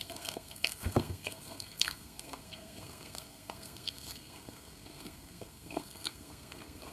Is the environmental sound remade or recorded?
remade